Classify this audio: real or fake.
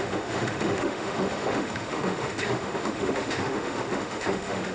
fake